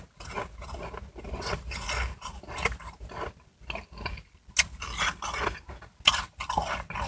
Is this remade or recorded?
recorded